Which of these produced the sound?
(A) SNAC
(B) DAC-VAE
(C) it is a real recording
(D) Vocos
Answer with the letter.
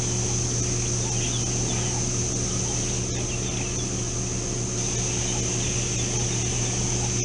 C